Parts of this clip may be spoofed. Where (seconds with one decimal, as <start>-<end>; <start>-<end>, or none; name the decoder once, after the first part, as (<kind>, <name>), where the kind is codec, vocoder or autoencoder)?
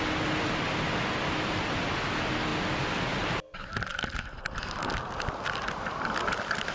none